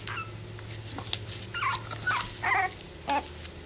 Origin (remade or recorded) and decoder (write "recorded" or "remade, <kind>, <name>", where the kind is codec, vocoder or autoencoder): recorded